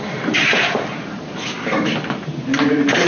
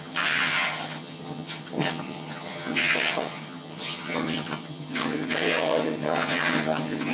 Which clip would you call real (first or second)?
first